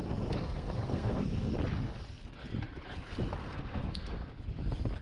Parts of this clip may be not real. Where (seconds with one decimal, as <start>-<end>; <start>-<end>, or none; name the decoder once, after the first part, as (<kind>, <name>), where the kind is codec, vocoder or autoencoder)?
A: 0.4-1.5 (codec, SNAC); 3.4-4.2